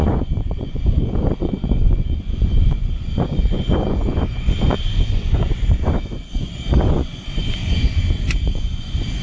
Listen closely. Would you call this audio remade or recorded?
remade